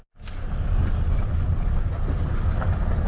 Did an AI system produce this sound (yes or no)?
no